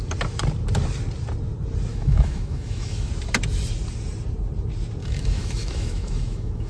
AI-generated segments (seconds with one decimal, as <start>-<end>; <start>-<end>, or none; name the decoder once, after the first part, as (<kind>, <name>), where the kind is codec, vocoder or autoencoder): 1.9-3.1 (autoencoder, DAC-VAE); 5.0-6.7